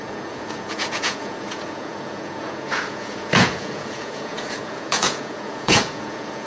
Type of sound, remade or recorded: remade